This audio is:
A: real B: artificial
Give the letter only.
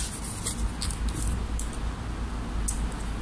A